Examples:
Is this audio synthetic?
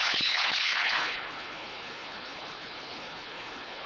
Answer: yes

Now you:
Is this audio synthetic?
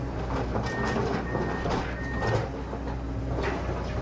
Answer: no